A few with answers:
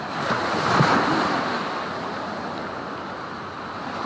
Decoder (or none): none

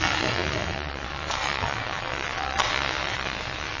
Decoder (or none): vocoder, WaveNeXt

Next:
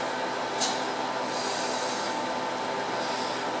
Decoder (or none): none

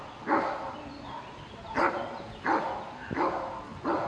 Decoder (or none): none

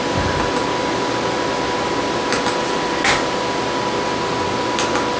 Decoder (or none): none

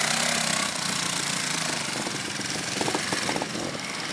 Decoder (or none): none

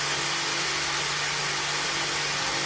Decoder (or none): none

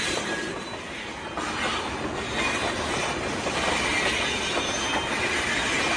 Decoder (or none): none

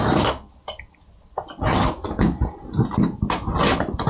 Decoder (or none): none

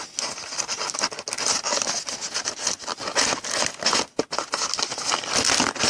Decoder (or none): none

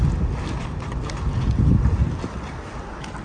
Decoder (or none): none